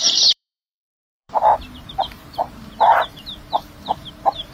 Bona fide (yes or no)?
no